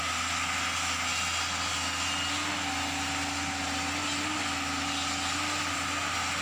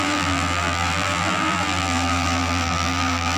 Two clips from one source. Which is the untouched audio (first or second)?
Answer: first